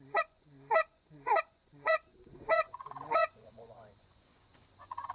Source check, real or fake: fake